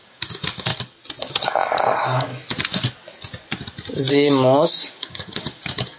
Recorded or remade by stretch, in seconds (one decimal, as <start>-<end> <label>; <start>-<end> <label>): 0.0-0.7 remade; 0.7-1.2 recorded; 1.2-2.3 remade; 2.3-4.1 recorded; 4.1-6.0 remade